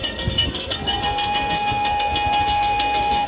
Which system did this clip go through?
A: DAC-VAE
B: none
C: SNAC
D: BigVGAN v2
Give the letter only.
C